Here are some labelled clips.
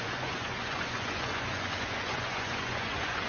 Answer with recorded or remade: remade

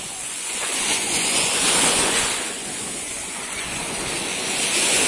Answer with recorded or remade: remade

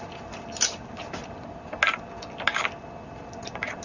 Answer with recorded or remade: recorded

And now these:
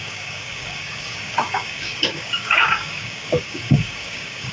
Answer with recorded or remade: remade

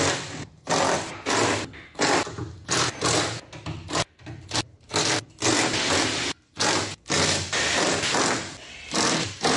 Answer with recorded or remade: recorded